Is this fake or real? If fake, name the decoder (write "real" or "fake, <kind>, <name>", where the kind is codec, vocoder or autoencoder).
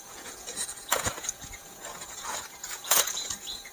fake, vocoder, Vocos